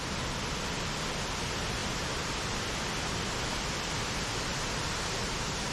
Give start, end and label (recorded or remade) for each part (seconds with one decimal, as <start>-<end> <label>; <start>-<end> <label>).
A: 0.0-5.7 recorded